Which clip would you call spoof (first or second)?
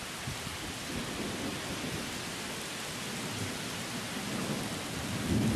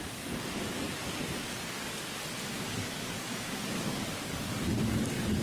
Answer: second